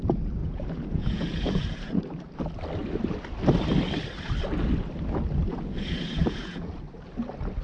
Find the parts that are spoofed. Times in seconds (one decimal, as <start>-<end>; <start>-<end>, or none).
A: 0.4-2.0; 5.5-6.8